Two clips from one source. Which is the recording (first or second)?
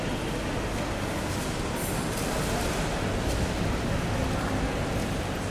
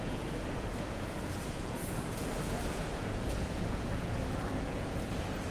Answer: first